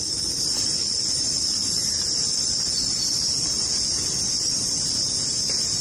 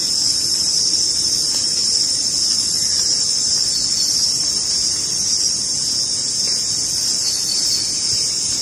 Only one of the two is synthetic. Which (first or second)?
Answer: first